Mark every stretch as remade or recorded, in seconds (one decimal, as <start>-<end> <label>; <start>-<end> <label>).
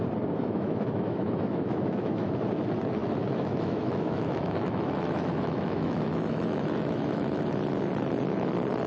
0.0-0.4 recorded; 0.4-2.3 remade; 2.3-3.0 recorded; 3.0-7.4 remade; 7.4-8.9 recorded